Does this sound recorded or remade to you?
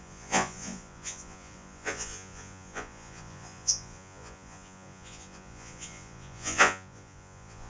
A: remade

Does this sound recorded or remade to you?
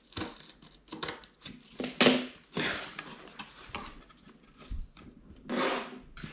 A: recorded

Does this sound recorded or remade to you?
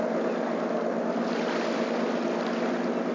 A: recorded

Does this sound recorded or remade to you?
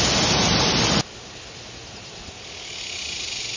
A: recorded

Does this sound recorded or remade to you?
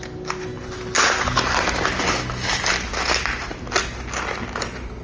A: recorded